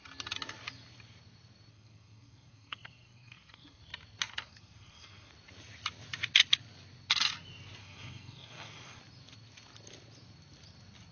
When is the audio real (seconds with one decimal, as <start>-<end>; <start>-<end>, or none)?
0.0-1.7; 3.8-4.3; 5.3-7.8; 9.0-11.1